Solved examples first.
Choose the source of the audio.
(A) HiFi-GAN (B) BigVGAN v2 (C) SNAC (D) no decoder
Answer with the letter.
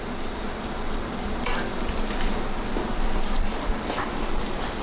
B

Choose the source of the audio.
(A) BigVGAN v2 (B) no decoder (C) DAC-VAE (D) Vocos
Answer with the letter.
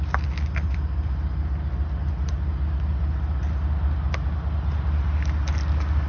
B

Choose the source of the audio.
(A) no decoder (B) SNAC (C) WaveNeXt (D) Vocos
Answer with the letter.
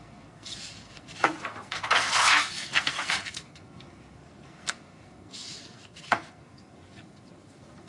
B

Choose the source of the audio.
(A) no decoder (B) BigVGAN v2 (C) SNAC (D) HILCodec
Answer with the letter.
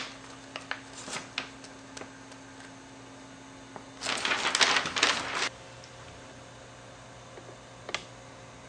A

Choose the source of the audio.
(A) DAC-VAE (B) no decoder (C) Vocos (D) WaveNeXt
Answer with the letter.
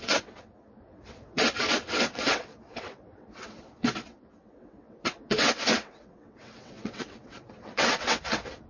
D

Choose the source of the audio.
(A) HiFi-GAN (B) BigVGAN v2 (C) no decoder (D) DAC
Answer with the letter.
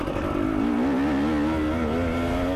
C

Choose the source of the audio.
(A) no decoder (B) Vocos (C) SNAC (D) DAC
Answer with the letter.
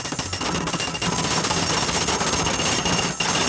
A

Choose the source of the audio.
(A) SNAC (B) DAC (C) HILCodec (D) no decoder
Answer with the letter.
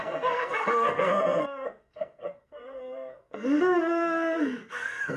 A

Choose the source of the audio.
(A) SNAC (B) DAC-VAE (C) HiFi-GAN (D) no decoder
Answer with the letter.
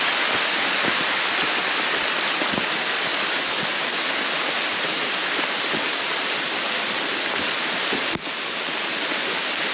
D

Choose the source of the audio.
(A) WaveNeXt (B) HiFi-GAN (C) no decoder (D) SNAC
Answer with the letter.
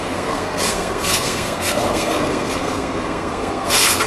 D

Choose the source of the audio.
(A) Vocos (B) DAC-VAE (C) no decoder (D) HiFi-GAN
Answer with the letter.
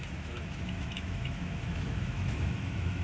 B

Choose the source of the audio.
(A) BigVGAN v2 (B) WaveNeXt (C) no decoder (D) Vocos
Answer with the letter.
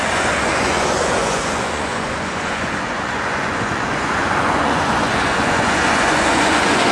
D